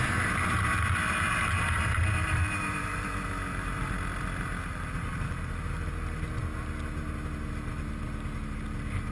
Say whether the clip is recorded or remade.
recorded